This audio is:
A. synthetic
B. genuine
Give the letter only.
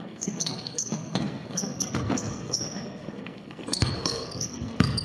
A